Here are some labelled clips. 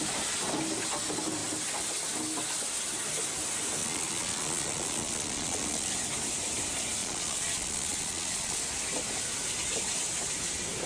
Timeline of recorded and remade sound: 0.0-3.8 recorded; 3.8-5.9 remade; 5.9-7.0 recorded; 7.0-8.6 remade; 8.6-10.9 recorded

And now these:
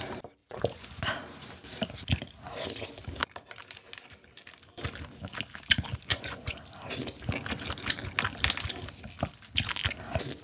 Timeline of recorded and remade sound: 0.0-0.4 recorded; 0.4-1.0 remade; 1.0-6.1 recorded; 6.1-6.6 remade; 6.6-10.4 recorded

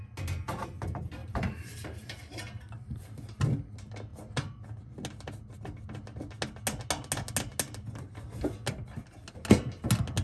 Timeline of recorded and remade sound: 0.0-1.2 recorded; 1.2-3.4 remade; 3.4-10.2 recorded

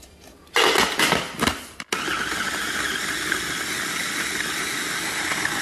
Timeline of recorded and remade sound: 0.0-5.6 recorded

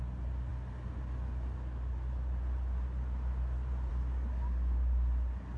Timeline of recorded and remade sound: 0.0-5.6 recorded

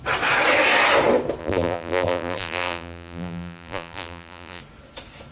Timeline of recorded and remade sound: 0.0-1.4 recorded; 1.4-4.6 remade; 4.6-5.3 recorded

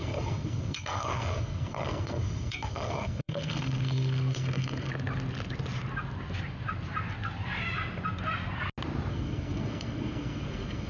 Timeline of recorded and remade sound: 0.0-4.9 remade; 4.9-9.1 recorded; 9.1-10.9 remade

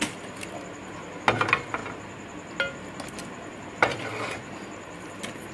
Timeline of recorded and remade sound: 0.0-5.5 recorded